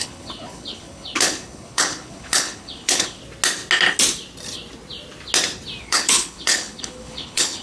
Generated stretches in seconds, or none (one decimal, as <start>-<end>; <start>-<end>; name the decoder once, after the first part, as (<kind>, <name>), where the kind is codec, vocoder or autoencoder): 0.0-3.2 (codec, HILCodec); 5.8-7.6